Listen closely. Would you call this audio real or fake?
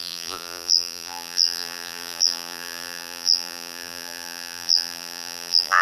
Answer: fake